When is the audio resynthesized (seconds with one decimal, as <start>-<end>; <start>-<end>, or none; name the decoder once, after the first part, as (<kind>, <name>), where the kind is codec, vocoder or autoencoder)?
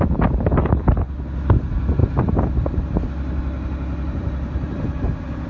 none